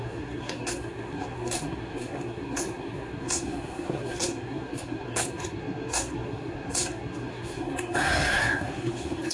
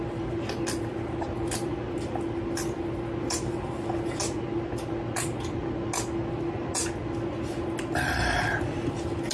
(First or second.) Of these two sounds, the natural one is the second